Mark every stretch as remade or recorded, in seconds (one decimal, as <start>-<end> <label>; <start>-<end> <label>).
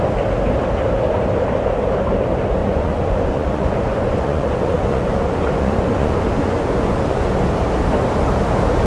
0.0-2.6 recorded; 2.6-7.3 remade; 7.3-8.9 recorded